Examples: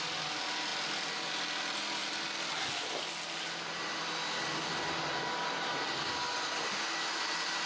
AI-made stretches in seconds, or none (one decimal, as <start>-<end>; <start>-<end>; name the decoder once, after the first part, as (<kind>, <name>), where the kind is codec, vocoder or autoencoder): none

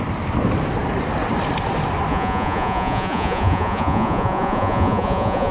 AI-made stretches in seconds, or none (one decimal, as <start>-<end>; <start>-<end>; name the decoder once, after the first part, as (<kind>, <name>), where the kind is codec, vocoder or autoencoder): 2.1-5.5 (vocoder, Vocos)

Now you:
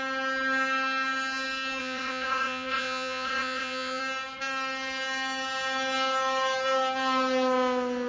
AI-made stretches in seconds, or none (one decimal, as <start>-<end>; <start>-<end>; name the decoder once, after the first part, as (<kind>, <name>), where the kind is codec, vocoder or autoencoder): 1.8-4.0 (vocoder, Vocos)

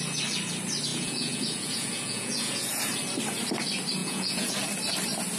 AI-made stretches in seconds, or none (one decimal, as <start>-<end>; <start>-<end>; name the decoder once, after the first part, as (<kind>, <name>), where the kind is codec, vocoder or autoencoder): 0.9-2.8 (vocoder, Vocos); 4.0-4.5

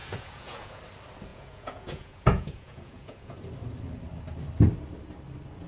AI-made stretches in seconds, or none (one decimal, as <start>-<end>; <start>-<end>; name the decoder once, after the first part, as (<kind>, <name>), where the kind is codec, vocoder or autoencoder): 0.0-0.8 (vocoder, Vocos); 1.3-3.4

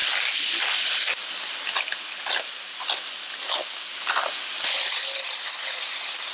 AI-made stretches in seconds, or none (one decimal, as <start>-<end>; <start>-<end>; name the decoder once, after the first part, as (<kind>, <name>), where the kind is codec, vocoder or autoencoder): none

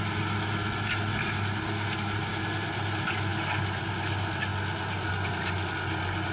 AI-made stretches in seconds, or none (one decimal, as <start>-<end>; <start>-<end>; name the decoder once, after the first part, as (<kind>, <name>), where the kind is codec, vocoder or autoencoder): none

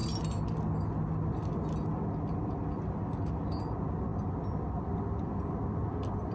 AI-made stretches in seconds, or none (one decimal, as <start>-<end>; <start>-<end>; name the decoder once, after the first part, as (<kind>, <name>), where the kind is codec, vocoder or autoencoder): none